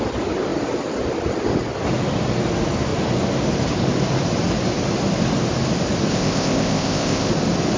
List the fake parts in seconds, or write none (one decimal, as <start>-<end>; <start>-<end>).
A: 6.1-7.3